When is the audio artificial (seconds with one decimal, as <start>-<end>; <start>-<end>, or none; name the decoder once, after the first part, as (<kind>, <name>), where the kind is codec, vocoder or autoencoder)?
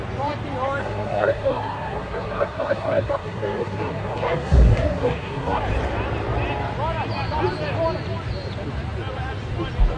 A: 0.8-5.6 (codec, SNAC)